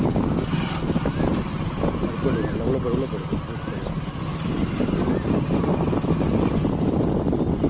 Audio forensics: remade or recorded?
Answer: recorded